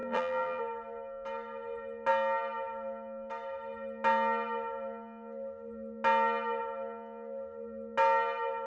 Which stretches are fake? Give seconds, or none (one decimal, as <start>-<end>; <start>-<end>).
0.0-0.6